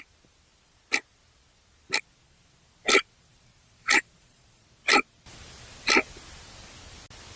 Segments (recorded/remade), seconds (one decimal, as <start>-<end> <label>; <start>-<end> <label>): 0.0-3.3 recorded; 3.3-4.6 remade; 4.6-7.4 recorded